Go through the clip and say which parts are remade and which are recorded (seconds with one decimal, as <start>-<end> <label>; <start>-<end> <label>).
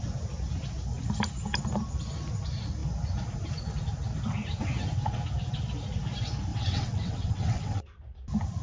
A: 0.0-6.5 recorded; 6.5-7.8 remade; 7.8-8.6 recorded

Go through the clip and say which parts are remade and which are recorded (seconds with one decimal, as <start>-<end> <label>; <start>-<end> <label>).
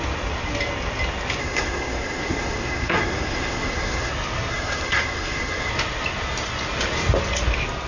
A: 0.0-1.4 recorded; 1.4-4.1 remade; 4.1-4.5 recorded; 4.5-5.7 remade; 5.7-7.9 recorded